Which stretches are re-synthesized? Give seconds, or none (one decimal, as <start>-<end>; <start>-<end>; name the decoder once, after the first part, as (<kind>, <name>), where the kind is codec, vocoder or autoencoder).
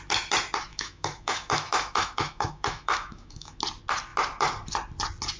0.7-3.6 (autoencoder, DAC-VAE)